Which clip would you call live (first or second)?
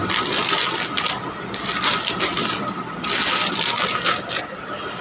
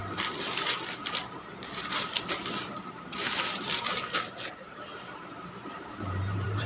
first